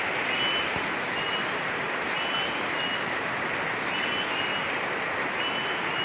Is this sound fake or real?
real